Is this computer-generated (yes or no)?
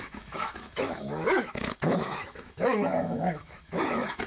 yes